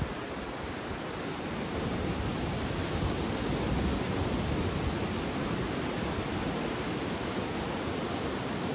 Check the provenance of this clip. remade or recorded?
recorded